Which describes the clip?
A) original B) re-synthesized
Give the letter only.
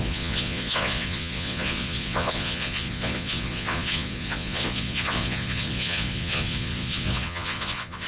B